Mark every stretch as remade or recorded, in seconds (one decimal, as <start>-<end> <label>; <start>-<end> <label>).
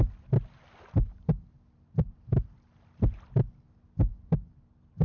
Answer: 0.0-5.0 recorded